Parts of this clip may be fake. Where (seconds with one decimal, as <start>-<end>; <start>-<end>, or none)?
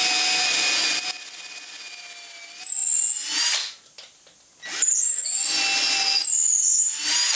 none